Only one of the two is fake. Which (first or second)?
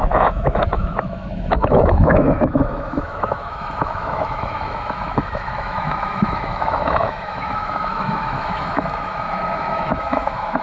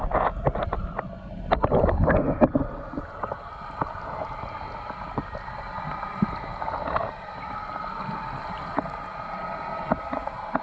first